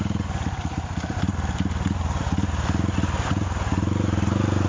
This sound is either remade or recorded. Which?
recorded